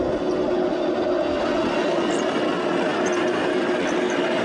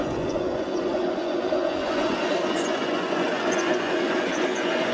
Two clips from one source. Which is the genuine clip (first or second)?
first